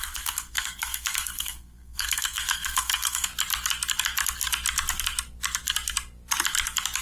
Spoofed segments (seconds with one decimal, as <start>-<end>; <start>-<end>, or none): 0.0-3.3